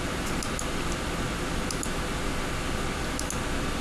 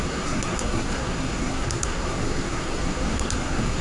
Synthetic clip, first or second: second